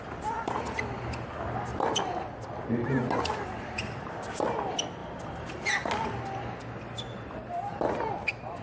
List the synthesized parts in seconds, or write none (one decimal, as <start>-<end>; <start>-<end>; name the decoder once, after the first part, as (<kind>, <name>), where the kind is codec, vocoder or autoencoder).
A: none